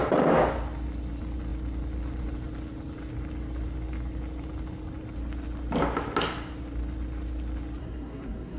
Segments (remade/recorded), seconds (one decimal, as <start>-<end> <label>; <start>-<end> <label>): 0.0-7.8 recorded; 7.8-8.6 remade